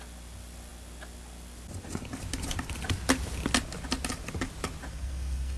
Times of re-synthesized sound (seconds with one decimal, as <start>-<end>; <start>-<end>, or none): 4.9-5.6